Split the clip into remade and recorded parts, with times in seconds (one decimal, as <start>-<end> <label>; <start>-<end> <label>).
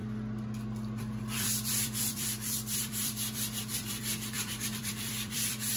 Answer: 0.0-1.0 recorded; 1.0-5.8 remade